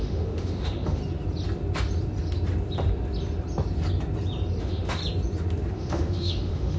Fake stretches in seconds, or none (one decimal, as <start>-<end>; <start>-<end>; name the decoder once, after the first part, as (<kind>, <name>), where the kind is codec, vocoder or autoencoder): 0.0-1.0 (autoencoder, DAC-VAE); 4.6-5.0; 5.7-6.8